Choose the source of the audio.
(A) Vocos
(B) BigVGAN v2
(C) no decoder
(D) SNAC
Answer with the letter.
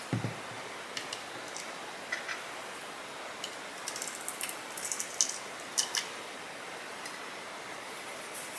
C